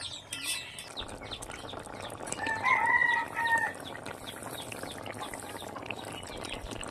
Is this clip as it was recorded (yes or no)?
yes